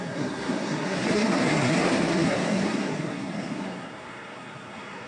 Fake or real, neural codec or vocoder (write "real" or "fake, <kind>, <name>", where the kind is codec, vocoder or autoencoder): fake, codec, SNAC